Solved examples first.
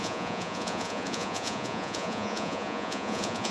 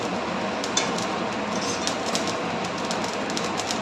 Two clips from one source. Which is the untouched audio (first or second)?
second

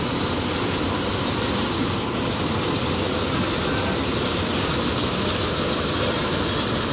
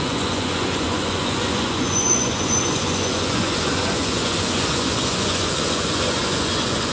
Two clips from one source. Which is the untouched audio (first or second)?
first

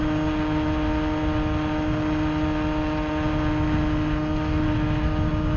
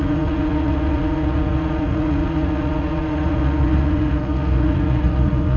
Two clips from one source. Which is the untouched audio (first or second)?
first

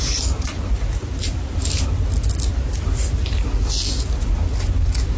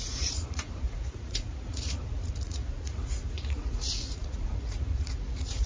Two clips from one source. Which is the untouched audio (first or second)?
first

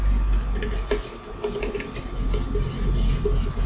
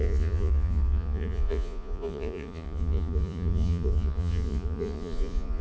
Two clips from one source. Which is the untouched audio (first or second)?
first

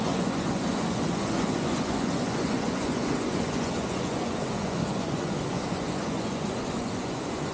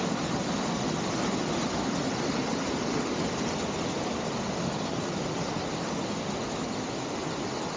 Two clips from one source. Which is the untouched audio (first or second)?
second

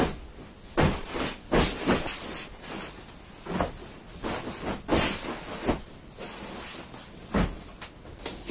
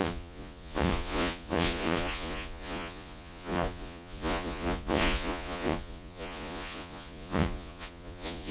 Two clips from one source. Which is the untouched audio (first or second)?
first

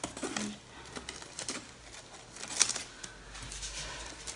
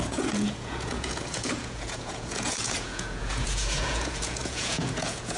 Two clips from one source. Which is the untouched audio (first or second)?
first